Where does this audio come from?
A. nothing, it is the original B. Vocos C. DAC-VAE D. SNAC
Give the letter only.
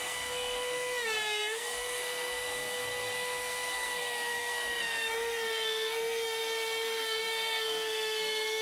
D